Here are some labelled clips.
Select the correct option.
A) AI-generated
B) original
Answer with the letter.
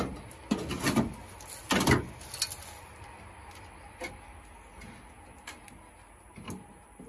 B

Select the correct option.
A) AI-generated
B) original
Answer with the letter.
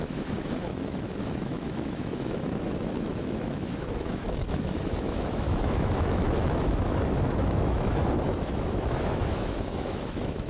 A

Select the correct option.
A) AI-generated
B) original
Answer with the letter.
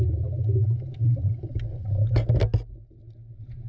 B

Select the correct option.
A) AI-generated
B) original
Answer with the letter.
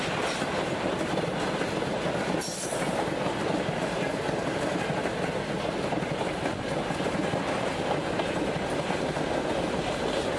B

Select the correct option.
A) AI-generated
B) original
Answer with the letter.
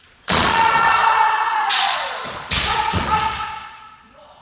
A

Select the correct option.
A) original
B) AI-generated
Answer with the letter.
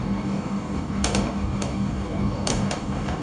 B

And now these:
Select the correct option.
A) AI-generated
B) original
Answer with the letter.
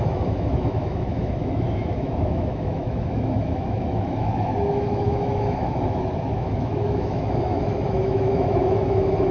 A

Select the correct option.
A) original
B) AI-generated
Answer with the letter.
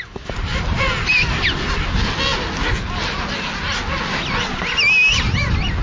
A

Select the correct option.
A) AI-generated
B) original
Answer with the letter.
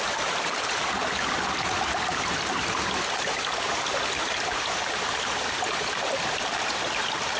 B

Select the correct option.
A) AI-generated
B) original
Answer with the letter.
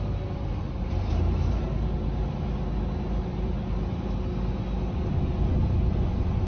B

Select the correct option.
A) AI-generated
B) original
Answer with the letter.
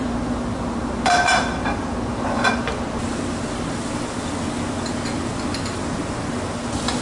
B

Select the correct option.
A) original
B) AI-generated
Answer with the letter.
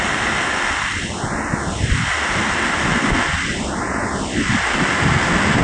A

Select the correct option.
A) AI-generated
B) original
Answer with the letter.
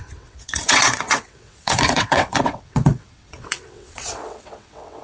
A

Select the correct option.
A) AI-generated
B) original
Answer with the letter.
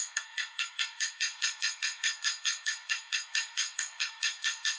A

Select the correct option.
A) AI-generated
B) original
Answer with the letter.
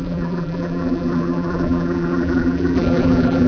A